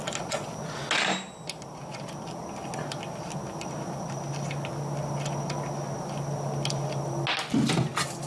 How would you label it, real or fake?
real